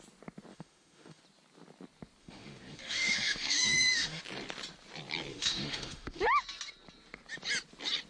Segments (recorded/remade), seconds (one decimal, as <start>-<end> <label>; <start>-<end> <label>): 0.0-0.5 recorded; 0.5-1.2 remade; 1.2-2.2 recorded; 2.2-4.2 remade; 4.2-5.3 recorded; 5.3-6.2 remade; 6.2-8.1 recorded